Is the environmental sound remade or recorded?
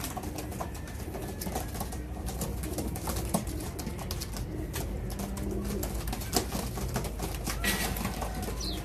recorded